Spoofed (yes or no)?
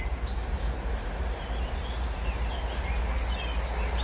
no